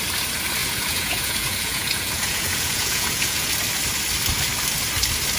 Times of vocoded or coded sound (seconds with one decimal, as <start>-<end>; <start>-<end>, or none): 0.6-3.5